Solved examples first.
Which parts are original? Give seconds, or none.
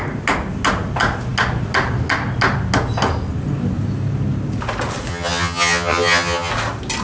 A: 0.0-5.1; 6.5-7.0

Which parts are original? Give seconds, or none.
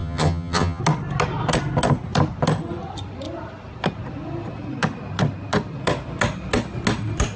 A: 0.8-7.4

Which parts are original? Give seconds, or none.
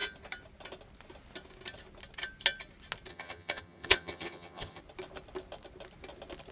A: 0.0-3.1; 4.8-6.5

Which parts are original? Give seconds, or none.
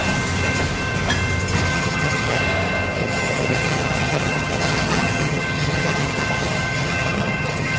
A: 0.0-1.7; 2.4-3.0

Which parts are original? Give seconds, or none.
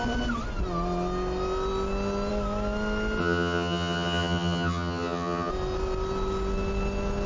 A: 0.0-3.2; 5.5-7.3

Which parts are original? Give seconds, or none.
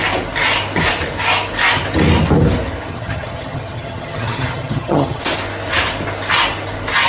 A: 0.0-2.9; 5.2-7.1